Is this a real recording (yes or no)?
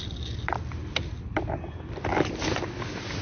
yes